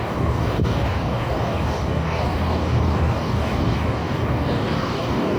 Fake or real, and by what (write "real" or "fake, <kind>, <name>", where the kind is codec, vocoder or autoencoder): fake, codec, DAC